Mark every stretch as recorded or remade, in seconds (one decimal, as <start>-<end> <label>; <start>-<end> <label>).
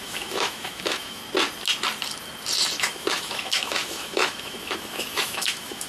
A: 0.0-1.2 remade; 1.2-2.8 recorded; 2.8-5.9 remade